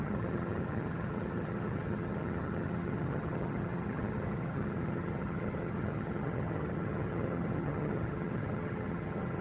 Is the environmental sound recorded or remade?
remade